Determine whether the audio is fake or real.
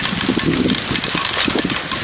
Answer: real